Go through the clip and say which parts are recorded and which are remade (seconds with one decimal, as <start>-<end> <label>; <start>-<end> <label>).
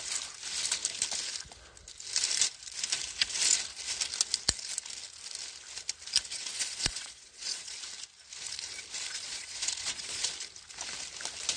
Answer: 0.0-6.5 recorded; 6.5-7.8 remade; 7.8-9.1 recorded; 9.1-10.3 remade; 10.3-11.6 recorded